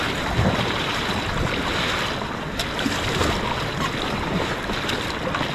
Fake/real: real